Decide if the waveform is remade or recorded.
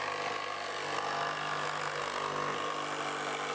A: recorded